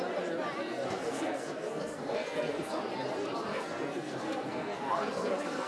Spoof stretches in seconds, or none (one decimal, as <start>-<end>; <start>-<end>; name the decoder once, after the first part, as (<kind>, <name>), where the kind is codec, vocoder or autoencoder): 0.6-2.8 (codec, SNAC); 3.5-5.7